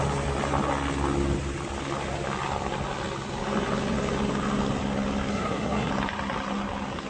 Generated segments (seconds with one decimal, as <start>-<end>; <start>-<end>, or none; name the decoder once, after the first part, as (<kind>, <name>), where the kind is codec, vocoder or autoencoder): 5.3-5.9 (codec, SNAC)